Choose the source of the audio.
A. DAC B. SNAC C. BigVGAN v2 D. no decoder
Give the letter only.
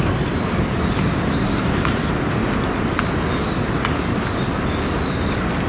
D